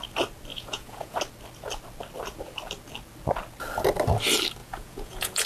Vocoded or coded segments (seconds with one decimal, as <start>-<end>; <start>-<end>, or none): 0.5-1.2; 4.6-5.5